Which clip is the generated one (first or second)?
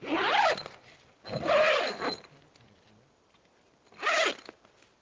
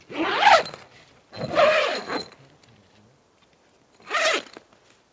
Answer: first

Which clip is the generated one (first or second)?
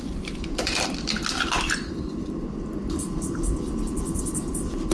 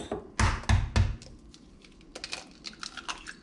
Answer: first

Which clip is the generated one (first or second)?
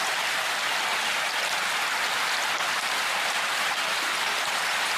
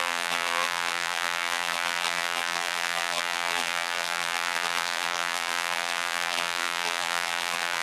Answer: second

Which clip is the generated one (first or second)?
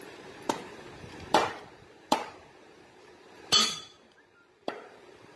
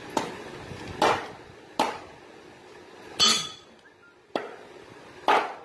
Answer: first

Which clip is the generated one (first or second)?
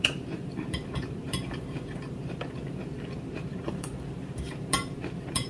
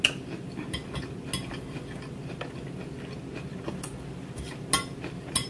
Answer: first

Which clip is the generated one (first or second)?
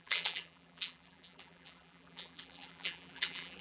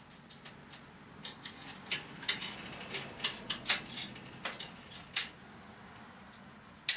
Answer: first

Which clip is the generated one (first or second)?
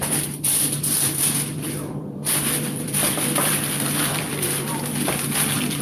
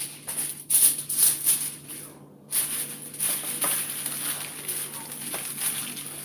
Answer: first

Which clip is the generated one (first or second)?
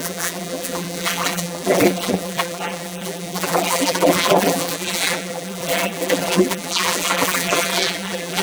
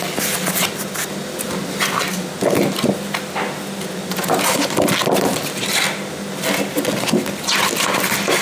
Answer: first